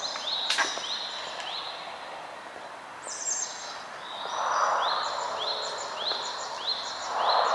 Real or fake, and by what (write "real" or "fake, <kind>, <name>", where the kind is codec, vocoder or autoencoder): real